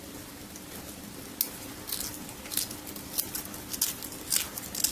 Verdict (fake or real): real